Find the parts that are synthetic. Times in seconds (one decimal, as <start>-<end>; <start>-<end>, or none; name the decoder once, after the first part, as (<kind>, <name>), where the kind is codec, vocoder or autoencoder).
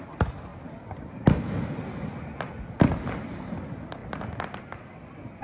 none